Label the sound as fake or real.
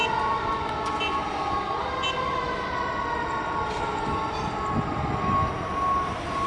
real